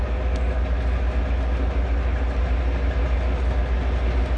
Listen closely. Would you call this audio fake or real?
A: real